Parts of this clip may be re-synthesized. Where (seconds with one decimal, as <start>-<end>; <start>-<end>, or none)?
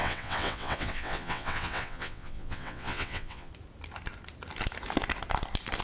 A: 0.0-3.5